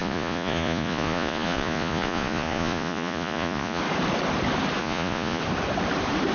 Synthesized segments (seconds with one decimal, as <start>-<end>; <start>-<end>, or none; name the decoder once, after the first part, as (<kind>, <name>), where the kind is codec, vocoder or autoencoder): 0.0-3.8 (vocoder, Vocos); 4.8-5.4